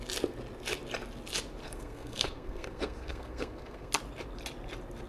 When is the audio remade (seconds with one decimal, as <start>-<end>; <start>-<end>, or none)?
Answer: 1.6-3.9